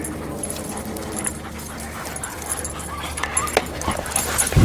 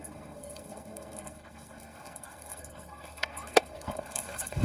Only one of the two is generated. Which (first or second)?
second